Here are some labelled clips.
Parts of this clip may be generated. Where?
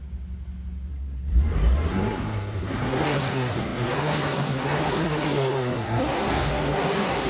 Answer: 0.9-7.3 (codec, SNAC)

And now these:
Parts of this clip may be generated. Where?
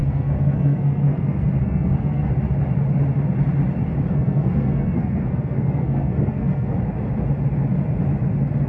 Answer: 0.0-2.3 (codec, SNAC); 4.1-6.8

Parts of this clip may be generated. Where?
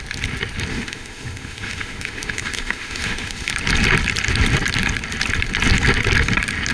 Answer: 0.7-3.5 (autoencoder, DAC-VAE)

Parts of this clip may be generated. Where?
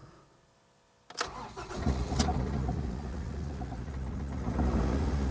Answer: 1.7-5.3 (vocoder, Vocos)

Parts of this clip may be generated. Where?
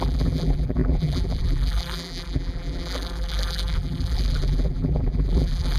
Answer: 0.0-5.8 (vocoder, BigVGAN v2)